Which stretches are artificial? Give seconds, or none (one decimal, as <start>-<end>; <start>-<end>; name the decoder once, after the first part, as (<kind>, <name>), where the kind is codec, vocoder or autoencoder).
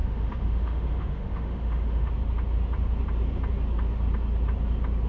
0.0-2.1 (autoencoder, DAC-VAE)